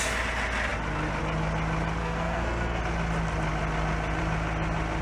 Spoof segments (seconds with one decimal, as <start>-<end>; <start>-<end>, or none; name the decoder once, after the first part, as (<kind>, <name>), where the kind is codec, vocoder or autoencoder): 2.0-2.8 (codec, SNAC)